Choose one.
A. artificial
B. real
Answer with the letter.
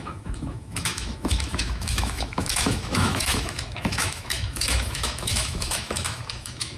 A